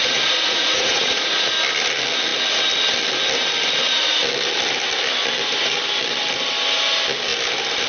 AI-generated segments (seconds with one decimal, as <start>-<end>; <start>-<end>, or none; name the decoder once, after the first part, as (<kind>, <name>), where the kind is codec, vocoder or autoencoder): 0.0-1.5 (vocoder, Vocos)